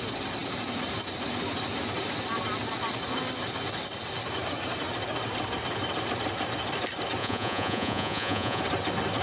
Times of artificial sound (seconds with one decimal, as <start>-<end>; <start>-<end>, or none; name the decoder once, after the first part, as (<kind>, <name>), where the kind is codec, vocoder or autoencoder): 7.2-8.6 (vocoder, Vocos)